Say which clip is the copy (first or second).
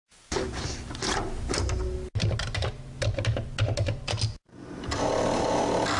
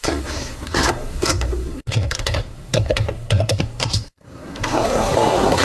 second